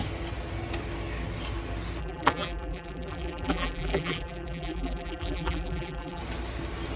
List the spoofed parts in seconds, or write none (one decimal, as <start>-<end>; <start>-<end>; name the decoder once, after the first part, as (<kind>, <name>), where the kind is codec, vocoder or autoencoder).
2.0-6.2 (vocoder, BigVGAN v2)